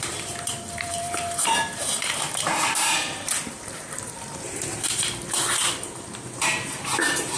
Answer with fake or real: fake